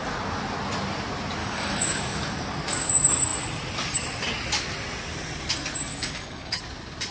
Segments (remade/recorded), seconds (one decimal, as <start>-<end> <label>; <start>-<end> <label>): 0.0-1.4 recorded; 1.4-2.9 remade; 2.9-5.9 recorded; 5.9-6.6 remade; 6.6-7.1 recorded